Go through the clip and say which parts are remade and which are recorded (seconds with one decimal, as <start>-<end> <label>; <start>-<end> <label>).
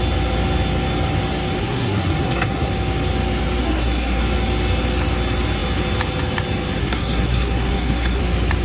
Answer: 0.0-1.6 recorded; 1.6-2.7 remade; 2.7-3.6 recorded; 3.6-4.2 remade; 4.2-6.8 recorded; 6.8-8.2 remade; 8.2-8.6 recorded